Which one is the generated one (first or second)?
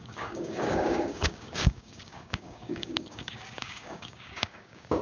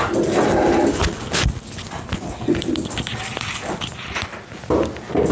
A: first